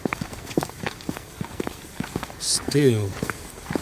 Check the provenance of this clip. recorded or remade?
remade